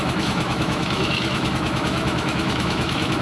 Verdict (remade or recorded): remade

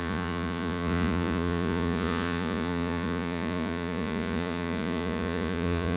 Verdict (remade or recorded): remade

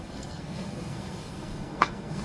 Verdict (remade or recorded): remade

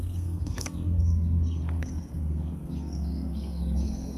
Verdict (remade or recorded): remade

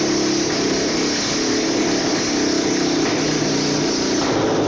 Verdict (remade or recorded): recorded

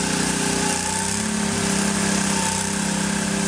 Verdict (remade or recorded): recorded